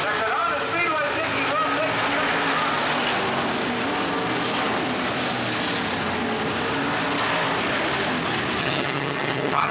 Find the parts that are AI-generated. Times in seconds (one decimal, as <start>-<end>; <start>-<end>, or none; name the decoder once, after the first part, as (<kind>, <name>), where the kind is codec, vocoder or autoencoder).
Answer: 8.6-9.7 (vocoder, HiFi-GAN)